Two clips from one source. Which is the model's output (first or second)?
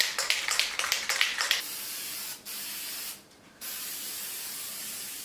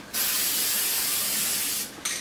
first